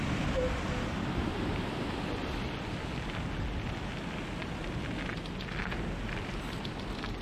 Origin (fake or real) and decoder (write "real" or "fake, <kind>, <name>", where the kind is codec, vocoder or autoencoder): real